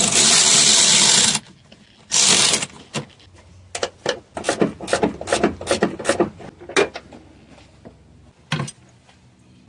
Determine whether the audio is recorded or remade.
recorded